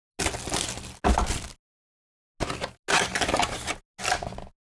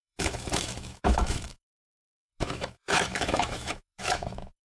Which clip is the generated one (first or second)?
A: second